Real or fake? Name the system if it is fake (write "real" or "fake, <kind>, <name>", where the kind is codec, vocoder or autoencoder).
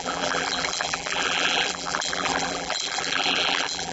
fake, vocoder, BigVGAN v2